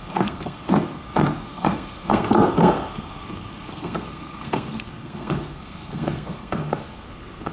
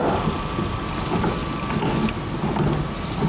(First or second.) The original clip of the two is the second